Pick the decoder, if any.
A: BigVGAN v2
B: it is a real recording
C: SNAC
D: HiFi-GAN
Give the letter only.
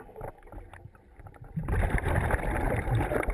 B